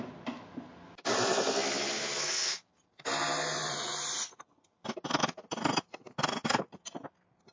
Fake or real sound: real